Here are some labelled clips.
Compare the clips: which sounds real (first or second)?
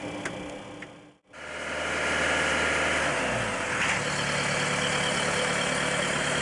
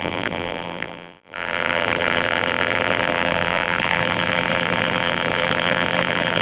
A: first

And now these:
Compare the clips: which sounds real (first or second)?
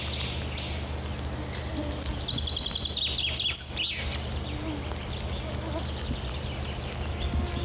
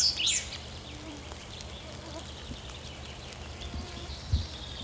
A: first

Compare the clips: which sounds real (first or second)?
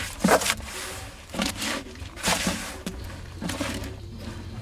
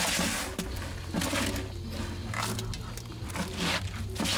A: second